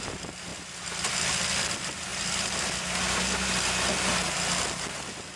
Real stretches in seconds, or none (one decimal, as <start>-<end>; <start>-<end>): 0.0-5.4

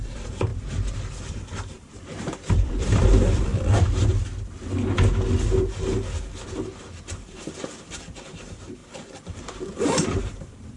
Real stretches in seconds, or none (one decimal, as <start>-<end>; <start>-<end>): 0.5-1.3; 3.5-7.0

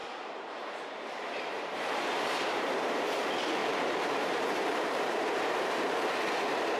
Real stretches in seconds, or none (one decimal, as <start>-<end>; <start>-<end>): 2.9-3.6; 6.0-6.8

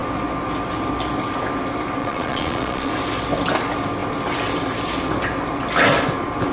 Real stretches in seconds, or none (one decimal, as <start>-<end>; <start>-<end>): 0.0-2.0; 2.9-6.5

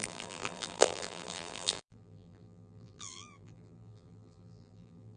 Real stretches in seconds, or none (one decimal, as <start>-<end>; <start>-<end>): none

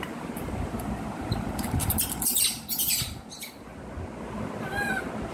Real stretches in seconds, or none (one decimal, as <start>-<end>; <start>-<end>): 3.7-5.3